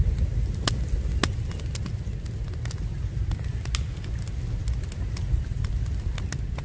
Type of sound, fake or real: real